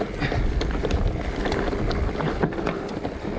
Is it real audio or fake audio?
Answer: real